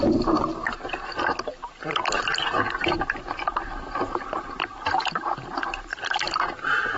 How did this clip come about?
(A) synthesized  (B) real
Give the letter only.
A